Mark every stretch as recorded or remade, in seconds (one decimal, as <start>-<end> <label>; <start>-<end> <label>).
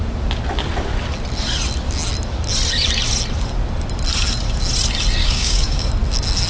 0.0-5.2 recorded; 5.2-5.9 remade; 5.9-6.5 recorded